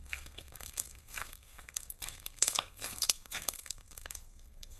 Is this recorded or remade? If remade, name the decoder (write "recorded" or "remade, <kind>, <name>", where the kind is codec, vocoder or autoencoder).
remade, codec, SNAC